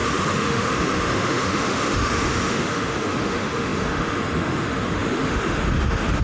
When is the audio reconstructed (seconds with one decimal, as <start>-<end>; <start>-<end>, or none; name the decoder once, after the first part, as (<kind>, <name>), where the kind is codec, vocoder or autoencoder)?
0.0-6.2 (autoencoder, DAC-VAE)